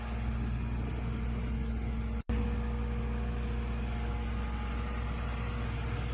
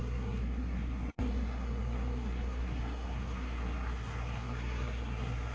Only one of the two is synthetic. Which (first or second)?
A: second